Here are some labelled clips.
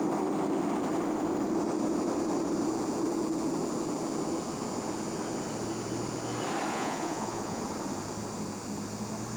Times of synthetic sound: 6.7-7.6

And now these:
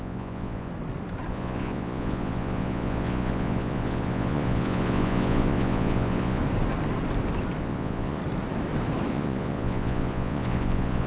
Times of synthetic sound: 0.0-0.7; 1.3-6.4; 7.6-8.2; 9.1-11.1

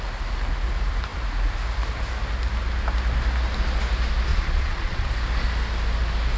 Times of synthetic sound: 4.3-5.1

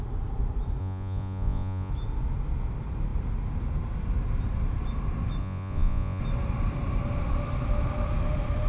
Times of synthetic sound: 0.8-1.9; 5.4-6.2

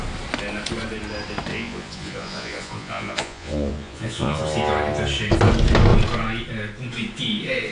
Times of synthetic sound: 1.5-4.4